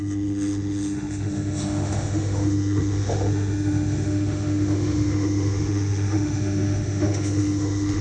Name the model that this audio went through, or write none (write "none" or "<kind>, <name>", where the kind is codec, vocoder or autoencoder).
autoencoder, DAC-VAE